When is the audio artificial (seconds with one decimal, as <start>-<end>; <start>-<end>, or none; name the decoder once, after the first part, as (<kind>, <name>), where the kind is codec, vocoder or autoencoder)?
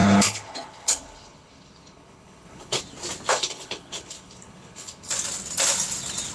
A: 0.0-2.8 (codec, HILCodec); 3.3-5.1